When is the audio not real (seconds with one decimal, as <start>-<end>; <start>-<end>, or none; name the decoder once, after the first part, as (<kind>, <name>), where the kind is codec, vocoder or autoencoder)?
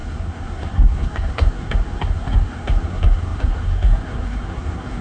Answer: 0.0-5.0 (codec, SNAC)